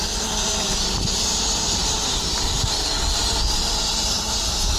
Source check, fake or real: fake